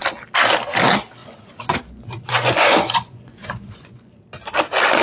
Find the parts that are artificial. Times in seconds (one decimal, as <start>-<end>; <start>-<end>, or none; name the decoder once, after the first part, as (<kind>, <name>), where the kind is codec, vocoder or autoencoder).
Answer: 1.2-4.2 (vocoder, Vocos)